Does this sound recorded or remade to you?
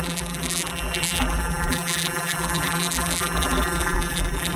remade